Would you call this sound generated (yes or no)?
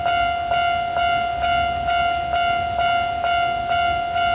no